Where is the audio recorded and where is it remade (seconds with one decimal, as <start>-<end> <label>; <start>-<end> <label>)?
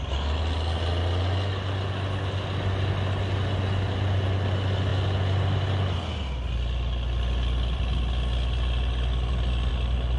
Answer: 0.0-10.2 recorded